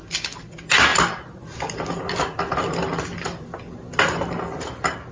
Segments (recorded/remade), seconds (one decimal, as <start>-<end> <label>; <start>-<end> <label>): 0.0-5.1 recorded